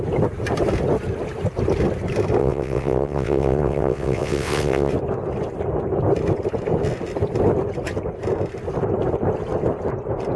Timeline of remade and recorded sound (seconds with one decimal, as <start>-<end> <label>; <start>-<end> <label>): 0.0-2.4 recorded; 2.4-4.9 remade; 4.9-10.4 recorded